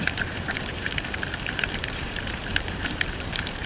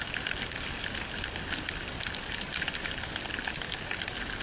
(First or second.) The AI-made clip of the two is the first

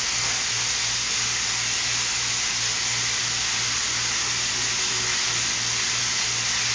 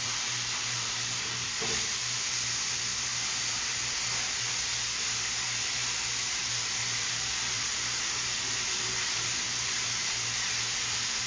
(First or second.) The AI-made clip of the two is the second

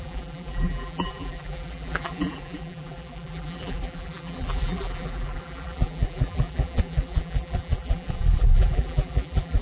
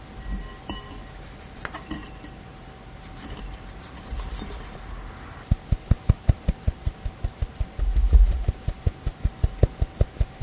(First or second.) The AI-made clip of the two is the first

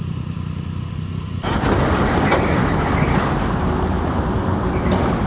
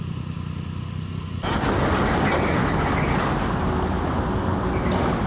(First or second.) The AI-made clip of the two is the first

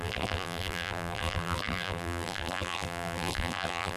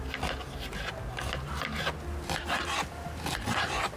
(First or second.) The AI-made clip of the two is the first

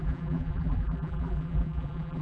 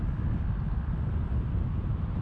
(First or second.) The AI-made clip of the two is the first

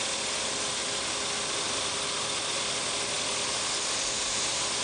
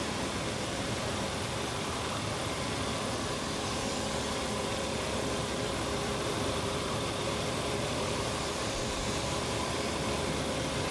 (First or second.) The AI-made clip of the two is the second